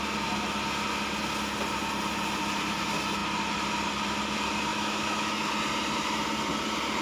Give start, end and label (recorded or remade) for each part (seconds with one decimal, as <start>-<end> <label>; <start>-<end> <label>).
0.0-4.7 recorded; 4.7-5.5 remade; 5.5-7.0 recorded